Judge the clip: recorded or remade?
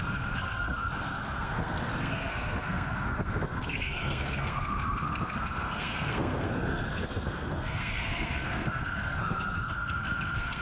remade